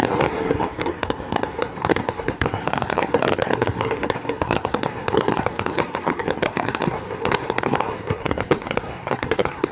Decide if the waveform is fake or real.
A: fake